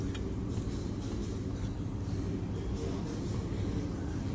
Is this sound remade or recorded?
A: recorded